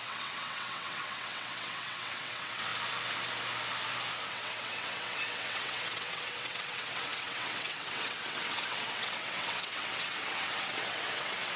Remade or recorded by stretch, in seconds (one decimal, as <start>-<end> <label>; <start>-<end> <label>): 0.0-2.7 remade; 2.7-4.3 recorded; 4.3-11.6 remade